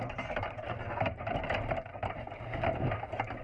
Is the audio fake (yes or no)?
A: yes